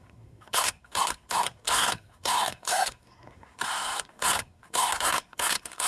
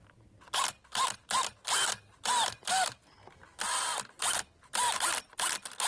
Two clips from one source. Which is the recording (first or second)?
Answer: second